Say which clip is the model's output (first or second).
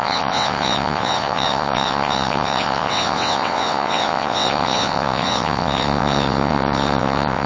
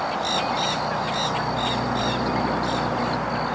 first